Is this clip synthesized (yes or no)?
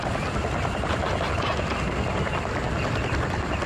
no